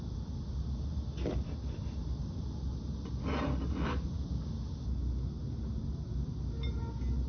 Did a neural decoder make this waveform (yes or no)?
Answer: no